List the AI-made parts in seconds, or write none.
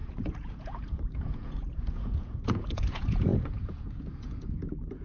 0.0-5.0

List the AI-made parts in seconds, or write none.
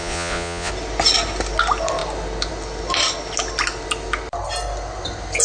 0.0-0.7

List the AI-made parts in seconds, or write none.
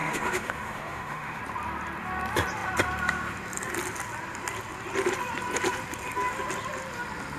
0.0-1.4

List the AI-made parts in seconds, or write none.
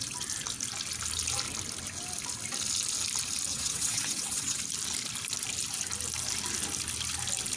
3.5-4.6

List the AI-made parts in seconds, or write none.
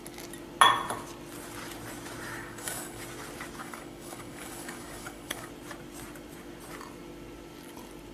2.4-3.0; 3.6-5.5